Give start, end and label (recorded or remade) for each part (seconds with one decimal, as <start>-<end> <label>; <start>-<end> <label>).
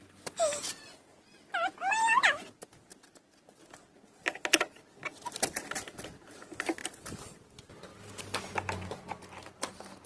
0.0-10.1 recorded